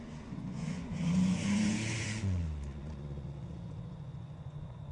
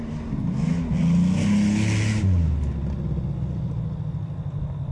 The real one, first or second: second